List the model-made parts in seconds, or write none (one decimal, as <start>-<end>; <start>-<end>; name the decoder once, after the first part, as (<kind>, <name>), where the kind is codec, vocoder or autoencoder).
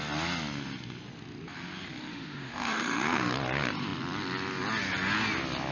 2.1-3.3 (autoencoder, DAC-VAE)